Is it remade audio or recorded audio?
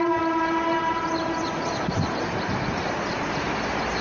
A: recorded